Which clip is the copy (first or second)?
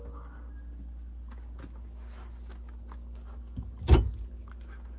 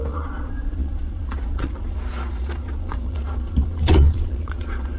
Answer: second